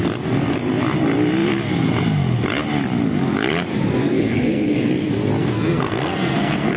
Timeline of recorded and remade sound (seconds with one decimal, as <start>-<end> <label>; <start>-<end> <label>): 0.0-4.0 recorded; 4.0-4.9 remade; 4.9-5.4 recorded; 5.4-6.8 remade